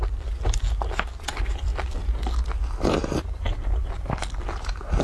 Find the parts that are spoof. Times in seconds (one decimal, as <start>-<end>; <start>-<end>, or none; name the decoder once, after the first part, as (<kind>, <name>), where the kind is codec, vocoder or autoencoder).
1.7-2.2 (vocoder, BigVGAN v2); 3.8-4.4